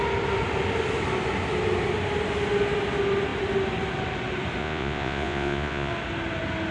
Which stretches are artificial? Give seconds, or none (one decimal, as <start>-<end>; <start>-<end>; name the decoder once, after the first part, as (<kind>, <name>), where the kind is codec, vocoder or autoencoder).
4.6-5.9 (vocoder, Vocos)